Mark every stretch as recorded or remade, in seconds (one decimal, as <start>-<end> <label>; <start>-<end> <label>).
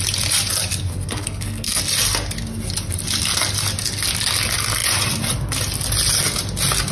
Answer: 0.0-0.9 recorded; 0.9-1.8 remade; 1.8-6.9 recorded